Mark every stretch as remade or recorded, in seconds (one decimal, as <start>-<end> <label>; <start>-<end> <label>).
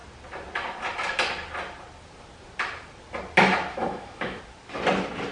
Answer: 0.0-3.7 recorded; 3.7-4.4 remade; 4.4-5.3 recorded